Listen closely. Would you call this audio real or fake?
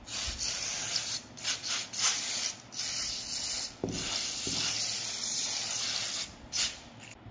real